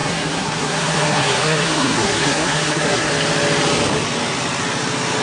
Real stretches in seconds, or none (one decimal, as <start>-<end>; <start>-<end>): 3.1-5.2